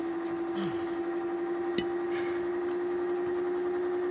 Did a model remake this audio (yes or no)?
no